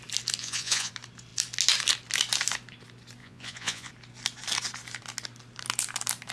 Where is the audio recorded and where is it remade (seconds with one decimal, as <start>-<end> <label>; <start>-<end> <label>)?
0.0-0.4 recorded; 0.4-0.9 remade; 0.9-3.2 recorded; 3.2-3.9 remade; 3.9-6.3 recorded